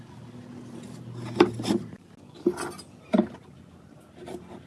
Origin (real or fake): real